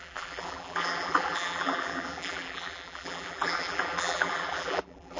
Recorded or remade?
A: remade